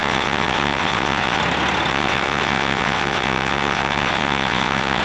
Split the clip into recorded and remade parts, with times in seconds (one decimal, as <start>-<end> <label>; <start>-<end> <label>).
0.0-1.4 remade; 1.4-1.9 recorded; 1.9-5.0 remade